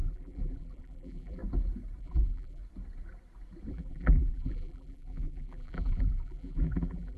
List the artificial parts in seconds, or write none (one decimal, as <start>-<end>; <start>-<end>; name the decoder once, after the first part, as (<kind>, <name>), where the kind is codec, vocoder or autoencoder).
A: 0.0-1.4 (vocoder, BigVGAN v2); 2.0-2.6; 3.7-7.2